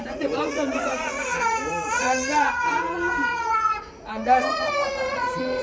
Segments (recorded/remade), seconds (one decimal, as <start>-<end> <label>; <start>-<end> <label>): 0.0-5.6 remade